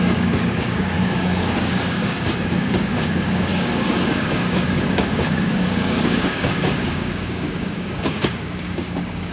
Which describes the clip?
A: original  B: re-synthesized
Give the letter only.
B